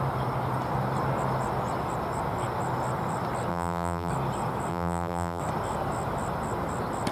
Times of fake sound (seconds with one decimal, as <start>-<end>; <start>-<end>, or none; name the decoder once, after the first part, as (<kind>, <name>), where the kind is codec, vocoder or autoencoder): 3.5-4.1 (vocoder, BigVGAN v2); 4.7-5.4